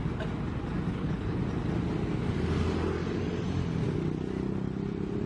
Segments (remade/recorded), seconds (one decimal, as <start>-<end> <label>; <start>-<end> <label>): 0.0-0.9 recorded; 0.9-1.4 remade; 1.4-5.3 recorded